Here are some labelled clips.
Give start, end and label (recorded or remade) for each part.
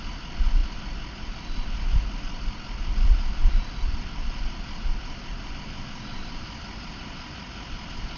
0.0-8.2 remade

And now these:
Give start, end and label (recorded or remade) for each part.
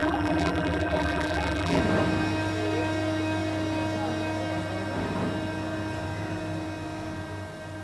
0.0-1.8 remade; 1.8-7.8 recorded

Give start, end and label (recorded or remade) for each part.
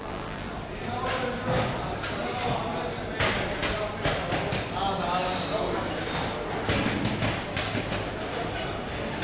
0.0-0.5 remade; 0.5-9.2 recorded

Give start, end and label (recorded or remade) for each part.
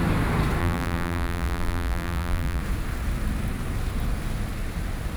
0.0-0.6 recorded; 0.6-2.6 remade; 2.6-5.2 recorded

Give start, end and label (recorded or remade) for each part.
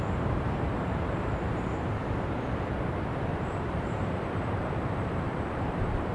0.0-2.0 remade; 2.0-3.4 recorded; 3.4-6.1 remade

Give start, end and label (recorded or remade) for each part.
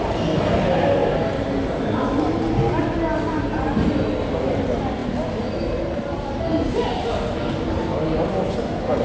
0.0-9.0 recorded